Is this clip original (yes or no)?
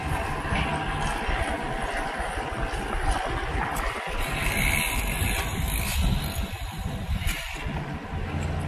yes